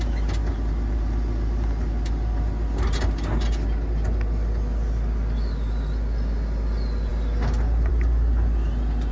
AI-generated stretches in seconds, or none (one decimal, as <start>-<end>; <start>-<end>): none